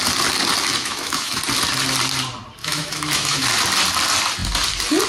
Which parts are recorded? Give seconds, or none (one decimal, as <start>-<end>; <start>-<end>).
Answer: 0.0-0.8; 1.4-2.6; 3.4-5.1